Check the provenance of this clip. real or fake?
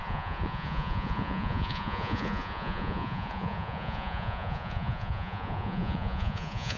fake